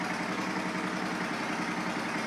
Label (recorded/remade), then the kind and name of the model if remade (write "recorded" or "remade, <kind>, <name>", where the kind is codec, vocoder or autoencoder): recorded